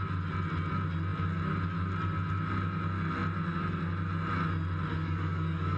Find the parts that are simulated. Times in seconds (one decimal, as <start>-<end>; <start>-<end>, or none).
4.9-5.8